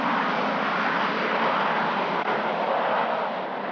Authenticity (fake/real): real